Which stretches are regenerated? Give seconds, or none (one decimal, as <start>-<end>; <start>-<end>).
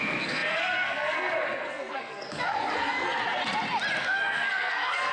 0.0-3.2; 4.0-5.1